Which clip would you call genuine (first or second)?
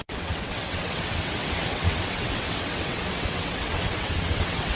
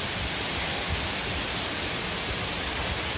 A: second